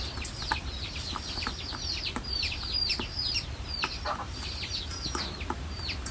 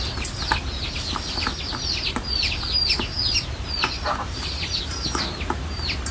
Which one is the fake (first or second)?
first